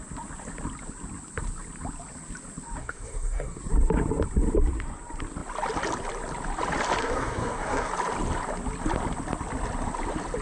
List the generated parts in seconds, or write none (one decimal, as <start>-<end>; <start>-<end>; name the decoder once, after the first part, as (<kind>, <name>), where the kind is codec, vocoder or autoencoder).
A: 2.8-3.6 (codec, SNAC); 7.0-7.9